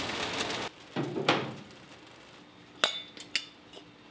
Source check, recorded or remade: recorded